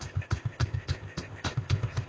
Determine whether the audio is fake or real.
fake